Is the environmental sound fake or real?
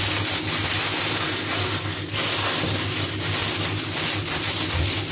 real